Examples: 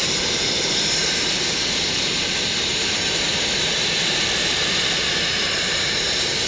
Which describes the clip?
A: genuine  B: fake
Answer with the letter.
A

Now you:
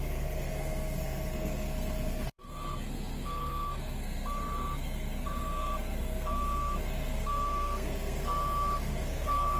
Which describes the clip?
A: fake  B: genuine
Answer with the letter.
A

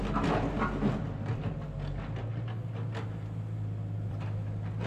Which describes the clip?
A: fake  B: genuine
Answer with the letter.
B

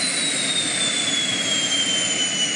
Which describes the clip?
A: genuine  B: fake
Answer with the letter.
A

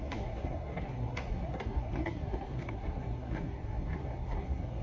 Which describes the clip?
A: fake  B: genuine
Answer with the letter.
A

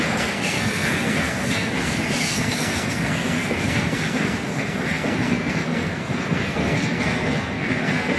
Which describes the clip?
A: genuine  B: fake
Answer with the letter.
B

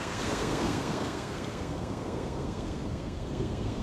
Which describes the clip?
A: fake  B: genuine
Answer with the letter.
A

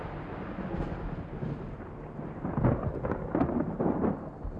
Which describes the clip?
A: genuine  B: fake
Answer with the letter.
A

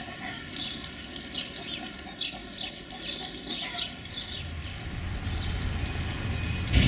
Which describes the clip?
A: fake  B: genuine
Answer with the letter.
B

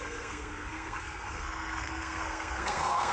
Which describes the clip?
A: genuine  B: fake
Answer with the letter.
B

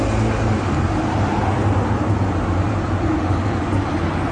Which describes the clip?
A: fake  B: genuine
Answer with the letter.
B